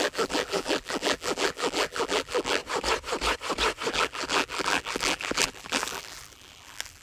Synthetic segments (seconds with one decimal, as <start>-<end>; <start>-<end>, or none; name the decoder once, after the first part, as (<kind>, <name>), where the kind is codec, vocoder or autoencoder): 0.0-2.6 (vocoder, BigVGAN v2); 3.9-7.0